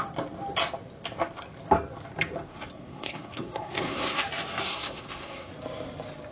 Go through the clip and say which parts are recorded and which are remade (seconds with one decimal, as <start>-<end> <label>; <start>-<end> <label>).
0.0-2.5 recorded; 2.5-4.2 remade; 4.2-4.7 recorded; 4.7-5.5 remade; 5.5-6.3 recorded